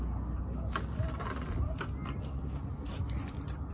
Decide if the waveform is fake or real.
real